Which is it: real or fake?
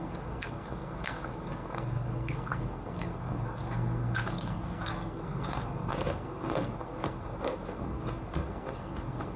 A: fake